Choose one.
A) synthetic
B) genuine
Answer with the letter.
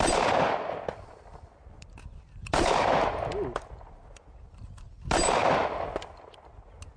B